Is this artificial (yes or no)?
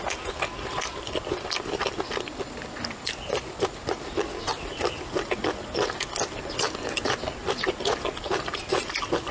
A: no